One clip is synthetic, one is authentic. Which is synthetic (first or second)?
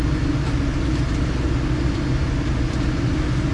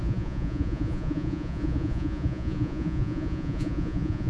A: second